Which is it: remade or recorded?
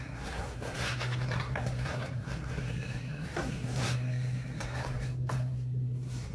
remade